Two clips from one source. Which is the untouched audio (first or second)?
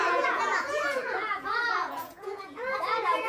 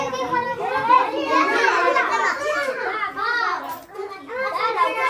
second